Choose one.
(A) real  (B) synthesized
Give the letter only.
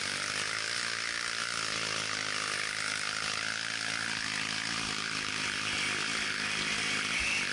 A